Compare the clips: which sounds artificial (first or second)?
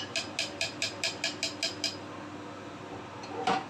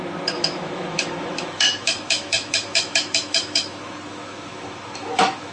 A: second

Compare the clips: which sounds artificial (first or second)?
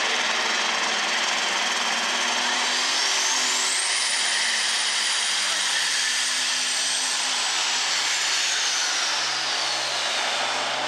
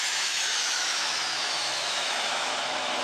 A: second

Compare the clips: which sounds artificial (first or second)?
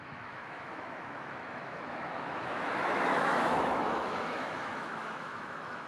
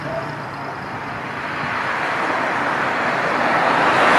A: first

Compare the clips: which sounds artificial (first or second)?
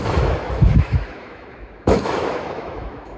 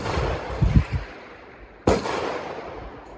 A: first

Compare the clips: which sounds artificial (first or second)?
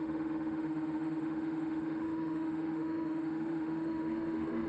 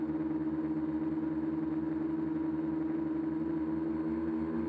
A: first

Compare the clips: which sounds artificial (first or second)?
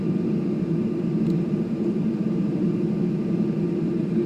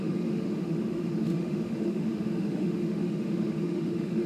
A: second